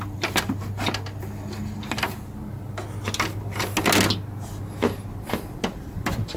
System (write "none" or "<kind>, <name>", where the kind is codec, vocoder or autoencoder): none